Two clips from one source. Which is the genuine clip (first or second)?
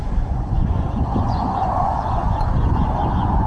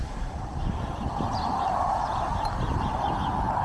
second